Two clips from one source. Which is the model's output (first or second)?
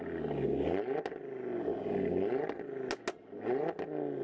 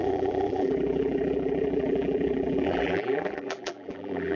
second